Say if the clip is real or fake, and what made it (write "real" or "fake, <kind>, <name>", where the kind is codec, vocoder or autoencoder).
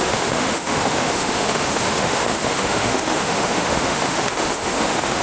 fake, autoencoder, DAC-VAE